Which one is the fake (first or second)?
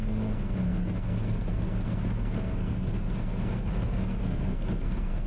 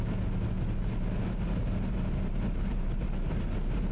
first